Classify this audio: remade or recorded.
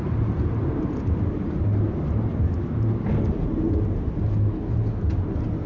recorded